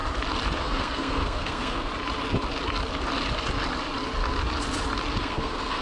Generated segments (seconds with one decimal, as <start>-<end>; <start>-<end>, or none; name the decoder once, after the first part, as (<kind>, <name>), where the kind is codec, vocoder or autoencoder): 0.6-1.9 (codec, SNAC); 5.2-5.8